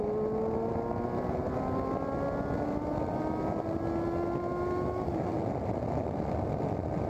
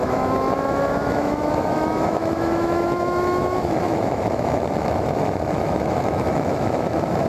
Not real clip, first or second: second